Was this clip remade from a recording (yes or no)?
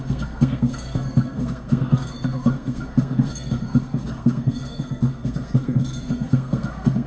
yes